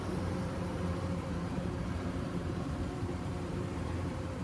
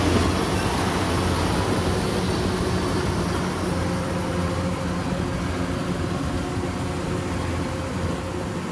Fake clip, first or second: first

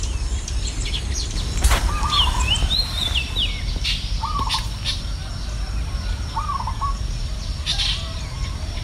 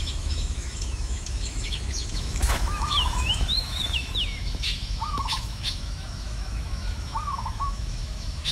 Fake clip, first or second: second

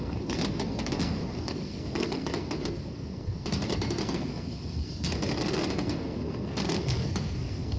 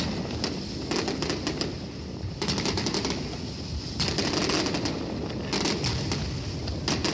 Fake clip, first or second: first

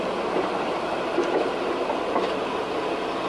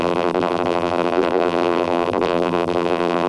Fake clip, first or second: second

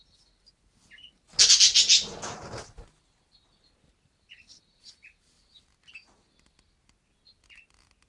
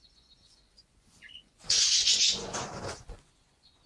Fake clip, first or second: second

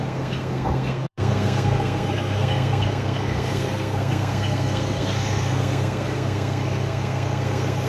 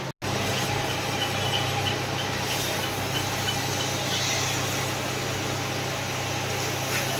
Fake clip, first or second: first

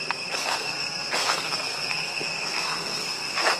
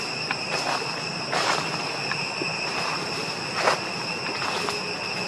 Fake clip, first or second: first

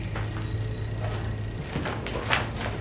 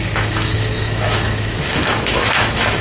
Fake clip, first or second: second